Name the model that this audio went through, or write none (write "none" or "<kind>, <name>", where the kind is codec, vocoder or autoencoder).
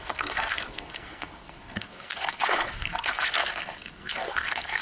codec, SNAC